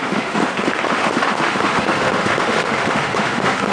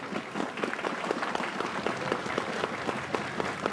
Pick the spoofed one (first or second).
first